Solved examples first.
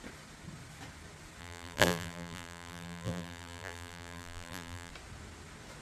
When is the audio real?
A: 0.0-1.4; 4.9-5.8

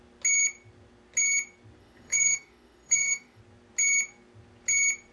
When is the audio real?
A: 0.0-1.8; 3.4-5.1

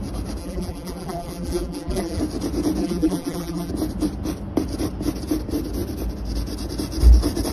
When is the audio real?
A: 0.0-0.4; 2.2-2.8; 3.7-7.5

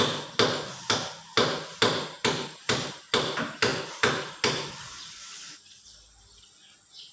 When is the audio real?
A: 0.0-1.7; 3.0-7.1

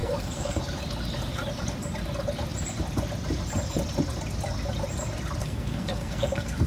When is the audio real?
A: 0.6-5.4